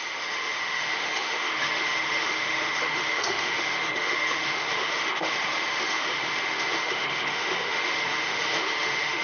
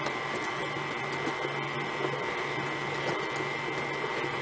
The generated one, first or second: first